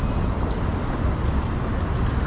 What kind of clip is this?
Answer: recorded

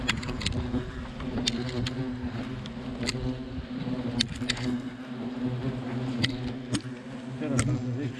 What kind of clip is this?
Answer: recorded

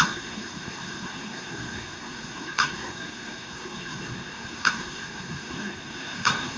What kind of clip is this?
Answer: remade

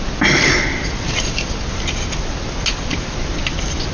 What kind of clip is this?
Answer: recorded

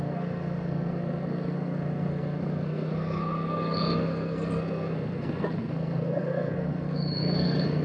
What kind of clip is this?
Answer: remade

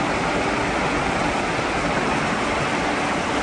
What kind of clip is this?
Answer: recorded